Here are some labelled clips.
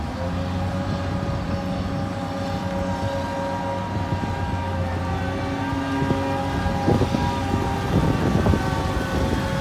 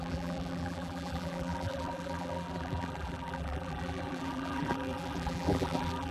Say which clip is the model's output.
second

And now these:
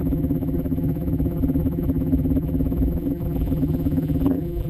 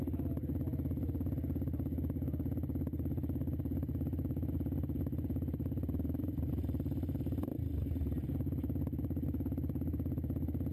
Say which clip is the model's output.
first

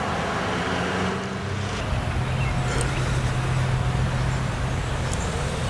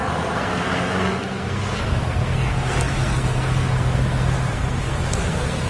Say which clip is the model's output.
second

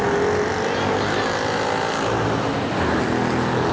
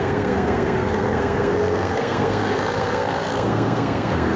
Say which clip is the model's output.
second